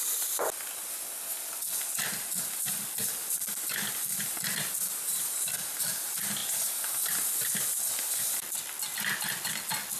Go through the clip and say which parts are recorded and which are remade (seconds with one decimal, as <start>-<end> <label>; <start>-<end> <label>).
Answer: 0.0-10.0 recorded